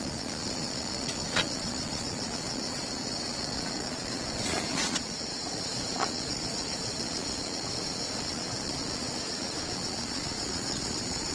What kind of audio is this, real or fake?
fake